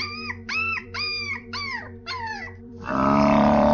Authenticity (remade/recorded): remade